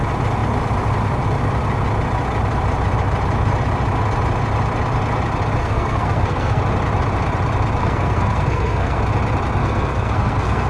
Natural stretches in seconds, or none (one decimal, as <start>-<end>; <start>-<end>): 0.0-5.6; 6.6-7.8; 9.0-9.6